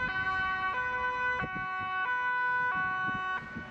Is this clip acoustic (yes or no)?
yes